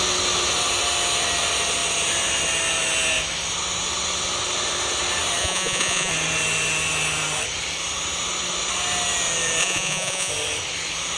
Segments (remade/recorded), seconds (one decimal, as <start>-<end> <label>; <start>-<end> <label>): 0.0-5.4 recorded; 5.4-6.1 remade; 6.1-9.6 recorded; 9.6-10.3 remade; 10.3-11.2 recorded